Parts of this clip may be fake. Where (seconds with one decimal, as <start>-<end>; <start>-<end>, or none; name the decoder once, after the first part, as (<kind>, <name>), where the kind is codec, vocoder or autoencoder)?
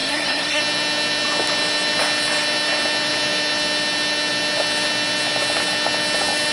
0.0-0.6 (codec, SNAC)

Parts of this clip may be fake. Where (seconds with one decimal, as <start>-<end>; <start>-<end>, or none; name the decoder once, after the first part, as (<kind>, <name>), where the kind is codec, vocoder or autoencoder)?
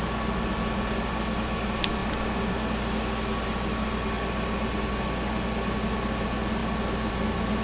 none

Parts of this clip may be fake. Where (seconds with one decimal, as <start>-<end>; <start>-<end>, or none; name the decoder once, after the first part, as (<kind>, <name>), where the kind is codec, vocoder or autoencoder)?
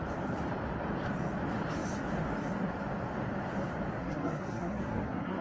4.0-5.4 (codec, SNAC)